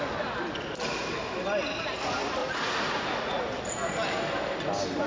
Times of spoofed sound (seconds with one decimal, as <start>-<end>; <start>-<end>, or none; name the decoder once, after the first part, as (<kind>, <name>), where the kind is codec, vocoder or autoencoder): 2.4-3.4 (vocoder, Vocos)